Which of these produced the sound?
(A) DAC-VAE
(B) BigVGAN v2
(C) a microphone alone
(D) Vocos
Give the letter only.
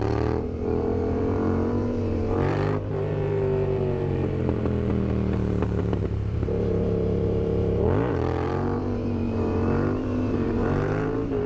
B